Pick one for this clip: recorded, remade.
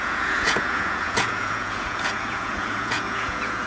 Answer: remade